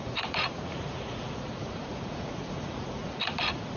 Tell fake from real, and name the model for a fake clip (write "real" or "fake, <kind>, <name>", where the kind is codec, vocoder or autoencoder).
fake, vocoder, Vocos